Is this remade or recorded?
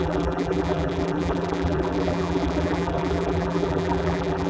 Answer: remade